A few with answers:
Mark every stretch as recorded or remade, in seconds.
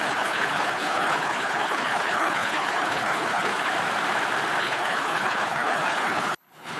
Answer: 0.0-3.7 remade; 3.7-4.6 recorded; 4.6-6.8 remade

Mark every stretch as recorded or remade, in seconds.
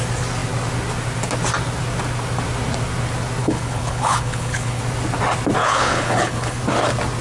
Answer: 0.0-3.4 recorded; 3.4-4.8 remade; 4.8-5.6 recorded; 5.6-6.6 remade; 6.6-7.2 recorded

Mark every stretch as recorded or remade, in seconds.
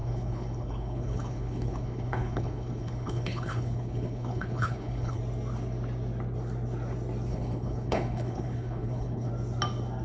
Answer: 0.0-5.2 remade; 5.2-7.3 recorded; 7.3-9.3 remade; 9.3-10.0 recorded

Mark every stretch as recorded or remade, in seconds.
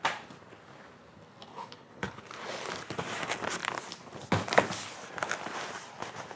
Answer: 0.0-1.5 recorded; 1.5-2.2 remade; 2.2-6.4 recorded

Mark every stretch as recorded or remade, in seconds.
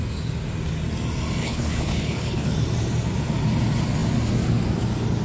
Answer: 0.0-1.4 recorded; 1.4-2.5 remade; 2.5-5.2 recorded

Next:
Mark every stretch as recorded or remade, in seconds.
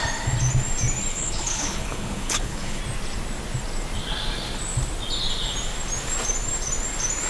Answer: 0.0-1.1 recorded; 1.1-2.8 remade; 2.8-7.3 recorded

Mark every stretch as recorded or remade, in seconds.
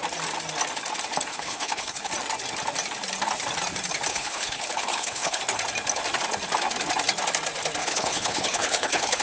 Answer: 0.0-1.3 recorded; 1.3-2.1 remade; 2.1-4.1 recorded; 4.1-5.4 remade; 5.4-7.8 recorded; 7.8-9.2 remade